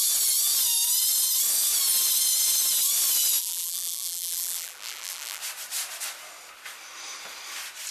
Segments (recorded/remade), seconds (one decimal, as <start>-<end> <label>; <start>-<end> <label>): 0.0-3.4 recorded; 3.4-5.4 remade; 5.4-7.9 recorded